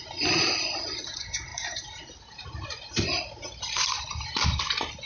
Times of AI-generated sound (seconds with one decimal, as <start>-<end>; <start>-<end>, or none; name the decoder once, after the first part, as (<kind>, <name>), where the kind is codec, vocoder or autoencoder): 1.5-4.6 (vocoder, BigVGAN v2)